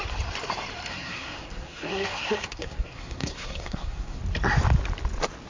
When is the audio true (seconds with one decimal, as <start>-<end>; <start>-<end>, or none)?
0.0-0.9; 4.2-5.5